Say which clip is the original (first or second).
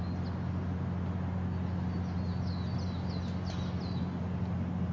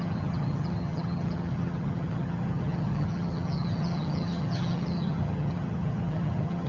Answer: first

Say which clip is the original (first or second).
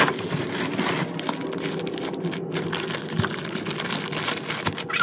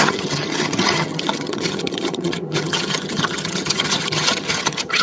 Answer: first